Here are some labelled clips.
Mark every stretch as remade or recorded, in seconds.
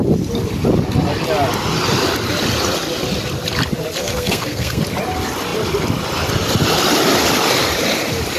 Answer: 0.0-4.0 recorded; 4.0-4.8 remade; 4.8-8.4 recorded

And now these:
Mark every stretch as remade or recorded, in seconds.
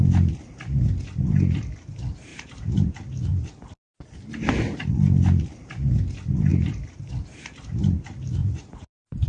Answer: 0.0-2.3 recorded; 2.3-2.9 remade; 2.9-6.5 recorded; 6.5-7.1 remade; 7.1-8.4 recorded; 8.4-9.3 remade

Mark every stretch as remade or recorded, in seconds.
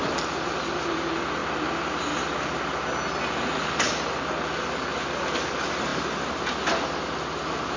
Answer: 0.0-7.8 recorded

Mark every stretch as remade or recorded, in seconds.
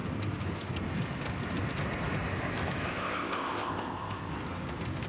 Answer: 0.0-2.9 recorded; 2.9-4.3 remade; 4.3-5.1 recorded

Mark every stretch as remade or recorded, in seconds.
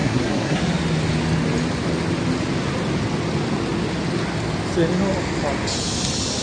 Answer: 0.0-0.6 remade; 0.6-6.4 recorded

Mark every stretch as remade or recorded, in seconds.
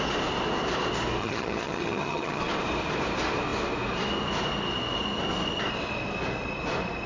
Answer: 0.0-1.2 recorded; 1.2-2.4 remade; 2.4-7.1 recorded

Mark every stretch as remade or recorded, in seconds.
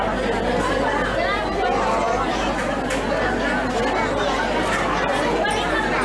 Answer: 0.0-6.0 recorded